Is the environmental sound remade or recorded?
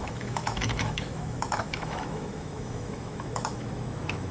remade